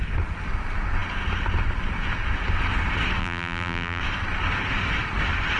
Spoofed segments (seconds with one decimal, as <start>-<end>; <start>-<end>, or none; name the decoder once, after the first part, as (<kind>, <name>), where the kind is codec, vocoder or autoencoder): 3.2-4.0 (vocoder, BigVGAN v2)